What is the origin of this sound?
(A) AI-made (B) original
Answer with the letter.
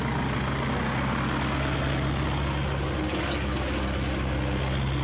B